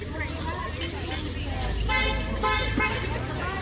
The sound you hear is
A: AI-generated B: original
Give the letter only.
B